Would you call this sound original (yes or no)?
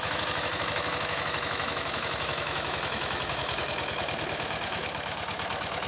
no